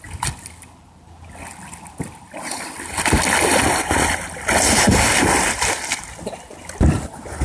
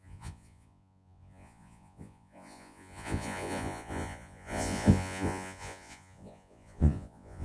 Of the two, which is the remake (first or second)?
second